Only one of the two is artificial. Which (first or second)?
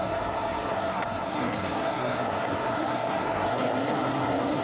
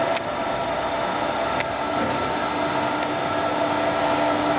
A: first